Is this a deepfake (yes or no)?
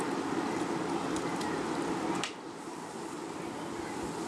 no